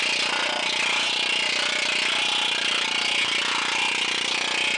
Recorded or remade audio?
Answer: recorded